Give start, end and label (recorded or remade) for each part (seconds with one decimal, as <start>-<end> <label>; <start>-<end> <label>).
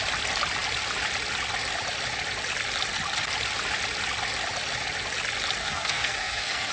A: 0.0-5.6 recorded; 5.6-6.7 remade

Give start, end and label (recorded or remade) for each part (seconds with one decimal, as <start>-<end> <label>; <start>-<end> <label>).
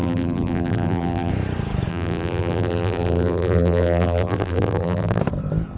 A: 0.0-1.3 remade; 1.3-1.9 recorded; 1.9-5.2 remade; 5.2-5.8 recorded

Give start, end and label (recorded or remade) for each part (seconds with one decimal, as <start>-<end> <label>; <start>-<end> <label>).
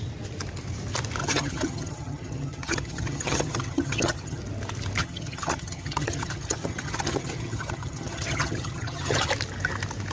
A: 0.0-1.2 recorded; 1.2-4.4 remade; 4.4-5.0 recorded; 5.0-9.3 remade; 9.3-10.1 recorded